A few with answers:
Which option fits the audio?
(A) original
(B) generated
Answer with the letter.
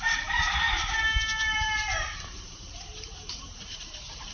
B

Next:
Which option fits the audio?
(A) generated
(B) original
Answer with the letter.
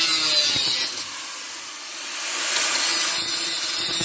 B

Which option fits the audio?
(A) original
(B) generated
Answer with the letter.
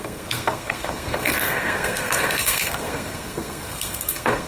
B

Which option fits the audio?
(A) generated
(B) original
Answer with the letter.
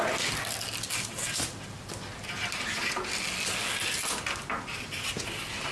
B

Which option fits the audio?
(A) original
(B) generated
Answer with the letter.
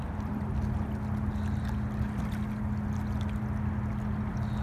A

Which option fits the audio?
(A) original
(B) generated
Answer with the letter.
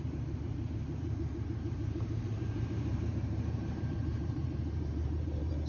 B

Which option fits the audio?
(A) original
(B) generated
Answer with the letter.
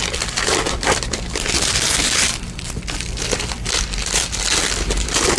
B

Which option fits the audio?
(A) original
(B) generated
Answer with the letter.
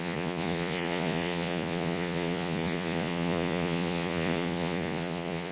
B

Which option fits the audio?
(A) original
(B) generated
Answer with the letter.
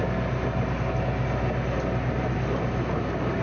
A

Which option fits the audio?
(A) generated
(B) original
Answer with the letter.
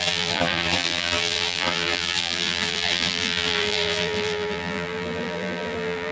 A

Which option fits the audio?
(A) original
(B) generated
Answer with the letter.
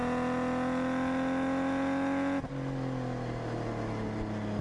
A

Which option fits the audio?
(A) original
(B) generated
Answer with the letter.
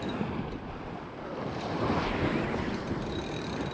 A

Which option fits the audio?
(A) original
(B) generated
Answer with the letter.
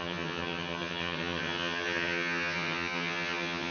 B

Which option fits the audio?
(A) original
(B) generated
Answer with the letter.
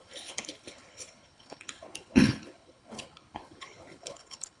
B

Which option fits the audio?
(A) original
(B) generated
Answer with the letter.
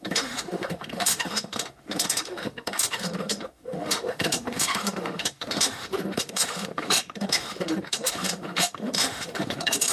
B